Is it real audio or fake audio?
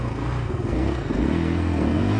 fake